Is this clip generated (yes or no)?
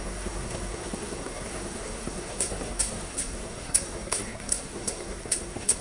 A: yes